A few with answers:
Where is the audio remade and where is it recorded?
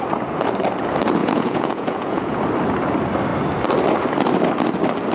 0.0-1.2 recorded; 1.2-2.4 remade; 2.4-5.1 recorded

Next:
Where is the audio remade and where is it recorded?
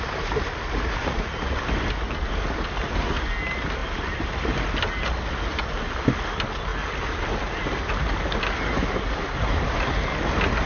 0.0-1.0 recorded; 1.0-1.6 remade; 1.6-10.7 recorded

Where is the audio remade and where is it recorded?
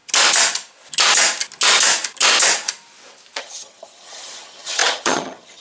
0.0-3.4 recorded; 3.4-5.6 remade